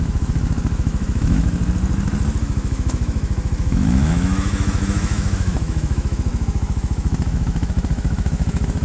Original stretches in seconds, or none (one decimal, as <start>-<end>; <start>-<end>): 1.6-2.4